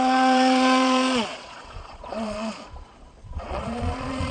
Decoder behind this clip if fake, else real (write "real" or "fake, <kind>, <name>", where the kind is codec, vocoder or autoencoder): fake, vocoder, Vocos